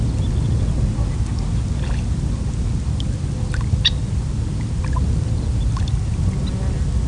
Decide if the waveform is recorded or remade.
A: recorded